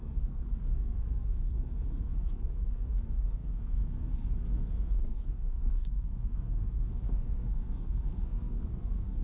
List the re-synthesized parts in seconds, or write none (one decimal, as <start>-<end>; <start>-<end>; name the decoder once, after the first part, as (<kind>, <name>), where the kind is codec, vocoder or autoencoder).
0.0-9.2 (codec, SNAC)